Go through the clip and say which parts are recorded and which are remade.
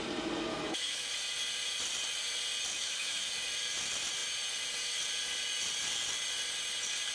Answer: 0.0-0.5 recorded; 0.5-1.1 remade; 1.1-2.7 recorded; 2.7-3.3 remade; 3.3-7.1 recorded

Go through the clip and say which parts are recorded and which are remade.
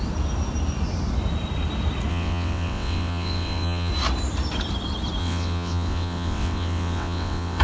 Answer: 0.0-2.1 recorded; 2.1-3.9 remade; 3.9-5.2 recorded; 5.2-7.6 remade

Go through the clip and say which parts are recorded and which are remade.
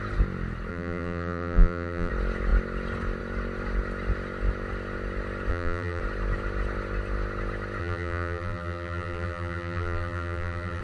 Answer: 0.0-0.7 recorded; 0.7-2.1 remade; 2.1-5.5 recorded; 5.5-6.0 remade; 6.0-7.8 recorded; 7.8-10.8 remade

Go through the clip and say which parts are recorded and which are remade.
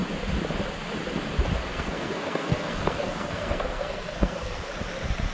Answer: 0.0-1.7 recorded; 1.7-4.7 remade; 4.7-5.3 recorded